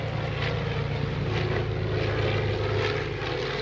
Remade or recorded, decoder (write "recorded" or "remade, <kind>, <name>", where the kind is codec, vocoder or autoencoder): recorded